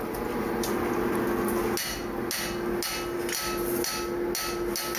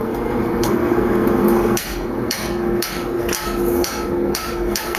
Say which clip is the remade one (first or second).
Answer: second